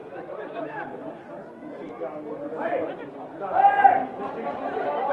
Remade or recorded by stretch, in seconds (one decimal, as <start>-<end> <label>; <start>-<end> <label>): 0.0-5.1 recorded